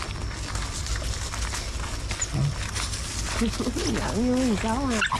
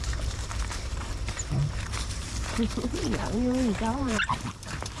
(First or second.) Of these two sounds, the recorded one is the first